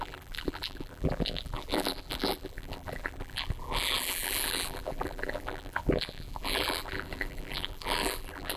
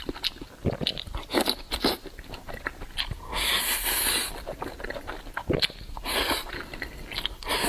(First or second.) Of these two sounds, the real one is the second